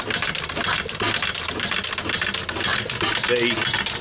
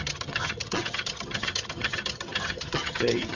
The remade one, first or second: second